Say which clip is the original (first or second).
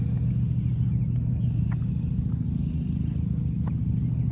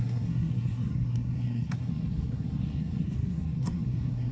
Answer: first